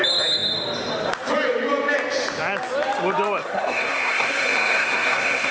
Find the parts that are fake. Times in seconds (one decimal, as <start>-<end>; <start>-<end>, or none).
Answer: 3.4-5.5